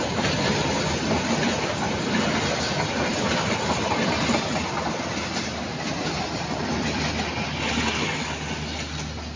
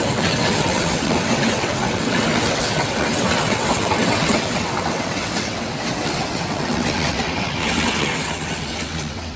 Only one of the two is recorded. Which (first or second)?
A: first